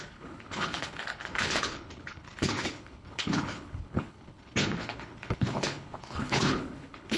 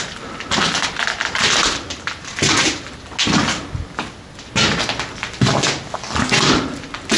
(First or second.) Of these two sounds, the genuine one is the second